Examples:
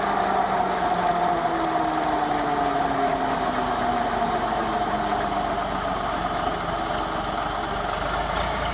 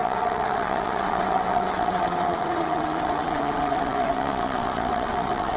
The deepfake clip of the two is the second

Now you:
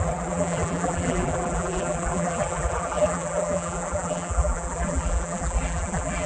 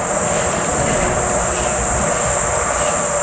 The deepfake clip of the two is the first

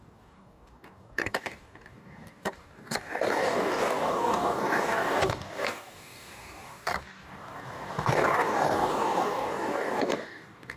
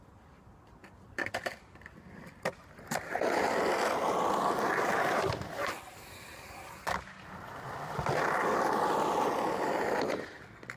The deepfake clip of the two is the first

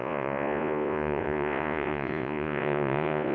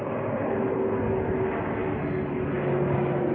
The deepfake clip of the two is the first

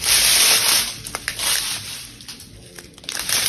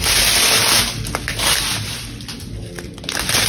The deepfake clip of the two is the first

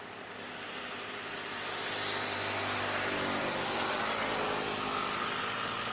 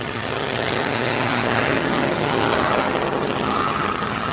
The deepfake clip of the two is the second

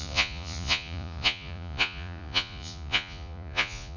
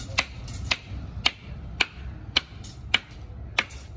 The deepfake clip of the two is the first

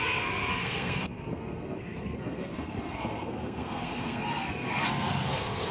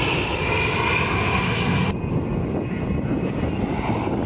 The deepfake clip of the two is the first